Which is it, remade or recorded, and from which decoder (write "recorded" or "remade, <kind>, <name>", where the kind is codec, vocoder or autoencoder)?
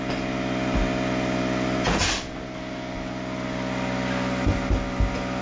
recorded